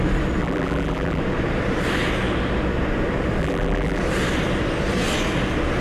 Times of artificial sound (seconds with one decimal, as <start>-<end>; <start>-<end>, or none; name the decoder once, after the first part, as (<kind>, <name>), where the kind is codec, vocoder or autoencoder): 0.4-1.2 (vocoder, BigVGAN v2); 3.4-4.0